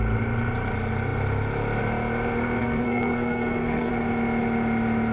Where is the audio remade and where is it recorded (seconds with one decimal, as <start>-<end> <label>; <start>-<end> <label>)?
0.0-2.6 recorded; 2.6-3.9 remade; 3.9-5.1 recorded

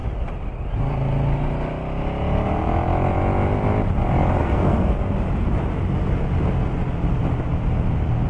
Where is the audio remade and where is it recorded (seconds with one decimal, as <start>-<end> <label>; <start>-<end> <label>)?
0.0-4.4 recorded; 4.4-4.9 remade; 4.9-8.3 recorded

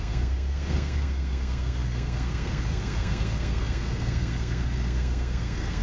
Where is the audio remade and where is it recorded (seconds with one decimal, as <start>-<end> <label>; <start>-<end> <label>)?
0.0-5.8 remade

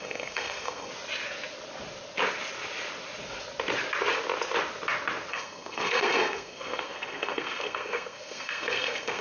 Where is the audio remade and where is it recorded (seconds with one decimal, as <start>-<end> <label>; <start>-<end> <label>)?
0.0-0.9 remade; 0.9-5.3 recorded; 5.3-9.2 remade

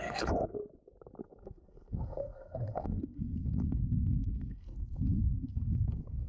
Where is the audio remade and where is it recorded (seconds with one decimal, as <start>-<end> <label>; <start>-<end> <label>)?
0.0-0.6 remade; 0.6-1.2 recorded; 1.2-6.3 remade

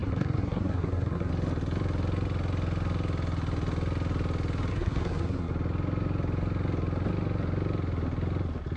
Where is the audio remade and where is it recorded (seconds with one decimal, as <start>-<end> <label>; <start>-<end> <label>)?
0.0-1.3 remade; 1.3-4.7 recorded; 4.7-5.5 remade; 5.5-8.8 recorded